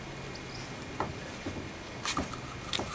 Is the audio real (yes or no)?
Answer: yes